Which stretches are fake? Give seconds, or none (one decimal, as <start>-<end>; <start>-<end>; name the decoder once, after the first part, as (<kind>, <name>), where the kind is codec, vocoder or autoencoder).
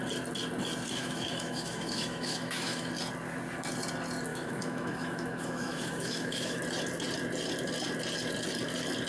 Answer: 1.0-2.9 (autoencoder, DAC-VAE); 4.3-6.6